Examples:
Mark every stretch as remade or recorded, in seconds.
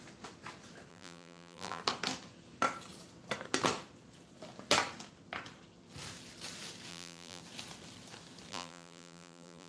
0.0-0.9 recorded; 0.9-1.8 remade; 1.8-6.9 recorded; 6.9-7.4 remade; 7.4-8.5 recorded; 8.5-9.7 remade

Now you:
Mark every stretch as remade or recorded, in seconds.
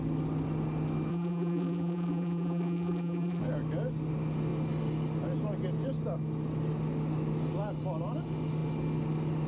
0.0-1.1 recorded; 1.1-3.4 remade; 3.4-9.5 recorded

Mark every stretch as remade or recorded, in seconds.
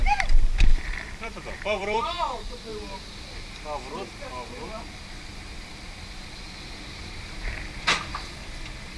0.0-2.7 remade; 2.7-3.4 recorded; 3.4-4.0 remade; 4.0-8.0 recorded; 8.0-9.0 remade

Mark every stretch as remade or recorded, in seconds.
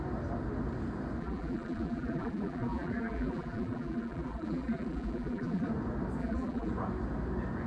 0.0-1.2 recorded; 1.2-5.7 remade; 5.7-6.2 recorded; 6.2-6.7 remade; 6.7-7.7 recorded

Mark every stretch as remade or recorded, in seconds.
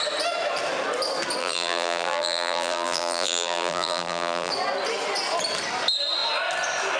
0.0-1.4 recorded; 1.4-4.5 remade; 4.5-7.0 recorded